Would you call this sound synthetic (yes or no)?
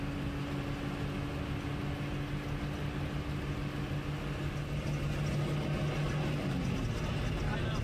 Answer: no